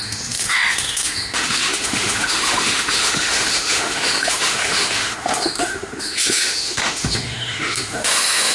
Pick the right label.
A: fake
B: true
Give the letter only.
A